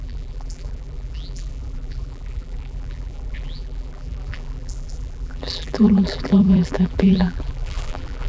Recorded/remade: remade